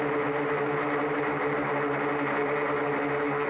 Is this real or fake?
real